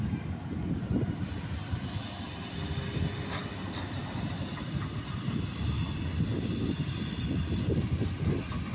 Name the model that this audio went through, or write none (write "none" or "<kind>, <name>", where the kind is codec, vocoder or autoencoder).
none